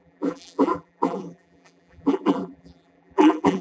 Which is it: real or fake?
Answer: fake